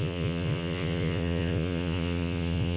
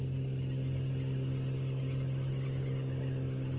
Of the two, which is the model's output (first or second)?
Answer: first